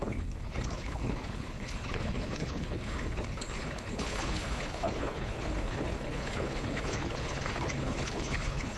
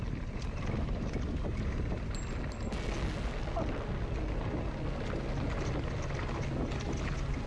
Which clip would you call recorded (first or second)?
second